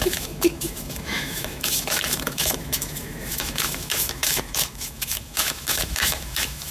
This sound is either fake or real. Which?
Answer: fake